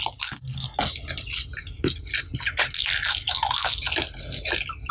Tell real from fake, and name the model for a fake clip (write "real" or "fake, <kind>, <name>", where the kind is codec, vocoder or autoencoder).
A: real